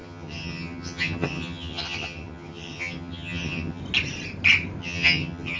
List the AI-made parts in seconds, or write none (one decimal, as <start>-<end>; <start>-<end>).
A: 0.0-3.8; 4.8-5.6